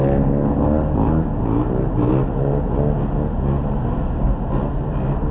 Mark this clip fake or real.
real